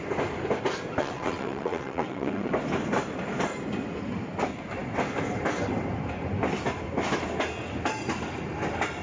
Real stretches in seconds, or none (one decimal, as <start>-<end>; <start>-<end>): 0.0-1.0; 2.5-9.0